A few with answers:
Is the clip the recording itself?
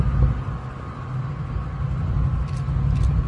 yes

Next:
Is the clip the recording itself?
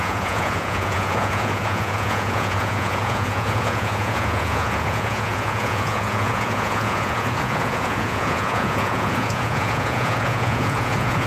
no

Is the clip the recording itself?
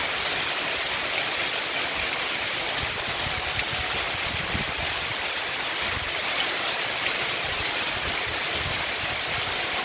yes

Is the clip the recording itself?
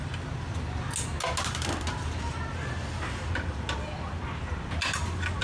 yes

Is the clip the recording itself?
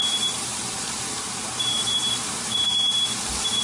no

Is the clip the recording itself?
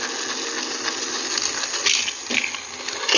yes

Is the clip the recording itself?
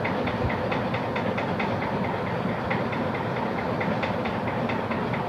yes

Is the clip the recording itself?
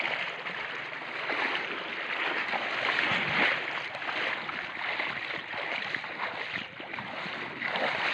yes